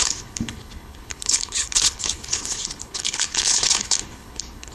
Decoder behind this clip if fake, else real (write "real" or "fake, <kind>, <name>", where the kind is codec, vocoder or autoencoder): fake, codec, HILCodec